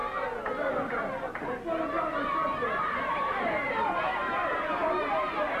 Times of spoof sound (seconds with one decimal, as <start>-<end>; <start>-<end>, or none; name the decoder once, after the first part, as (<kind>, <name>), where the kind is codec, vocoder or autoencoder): none